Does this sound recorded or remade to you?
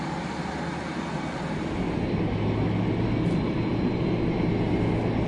recorded